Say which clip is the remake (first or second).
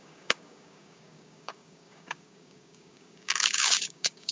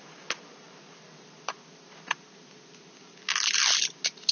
first